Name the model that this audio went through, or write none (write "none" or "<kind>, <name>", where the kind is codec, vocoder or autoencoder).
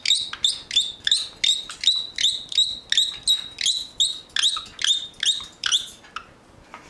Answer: none